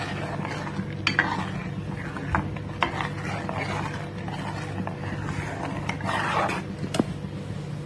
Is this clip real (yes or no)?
yes